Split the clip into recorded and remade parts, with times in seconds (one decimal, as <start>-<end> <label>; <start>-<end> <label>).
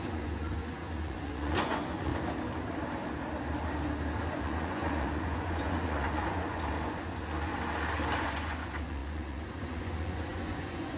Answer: 0.0-2.1 remade; 2.1-4.3 recorded; 4.3-7.5 remade; 7.5-8.2 recorded; 8.2-11.0 remade